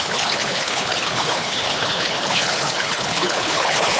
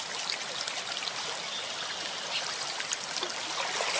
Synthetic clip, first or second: first